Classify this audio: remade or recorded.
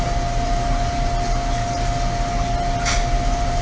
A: recorded